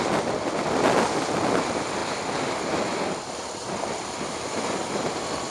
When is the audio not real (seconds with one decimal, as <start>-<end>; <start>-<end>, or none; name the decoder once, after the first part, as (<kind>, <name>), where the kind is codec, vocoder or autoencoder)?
none